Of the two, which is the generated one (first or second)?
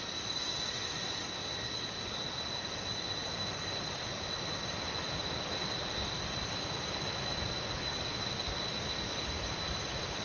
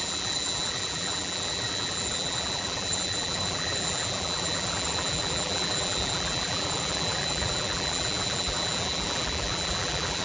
second